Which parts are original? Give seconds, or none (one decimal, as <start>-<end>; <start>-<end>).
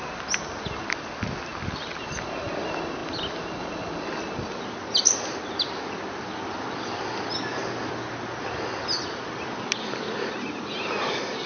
0.0-11.5